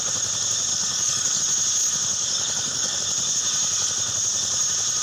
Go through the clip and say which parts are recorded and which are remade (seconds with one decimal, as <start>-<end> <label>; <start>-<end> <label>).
0.0-0.7 recorded; 0.7-1.4 remade; 1.4-2.2 recorded; 2.2-3.0 remade; 3.0-5.0 recorded